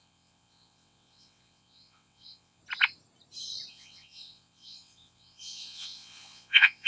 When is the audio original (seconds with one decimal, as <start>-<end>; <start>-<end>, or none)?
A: 2.6-3.7